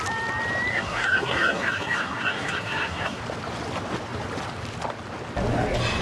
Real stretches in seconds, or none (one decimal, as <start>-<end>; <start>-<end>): 0.0-0.7; 3.2-6.0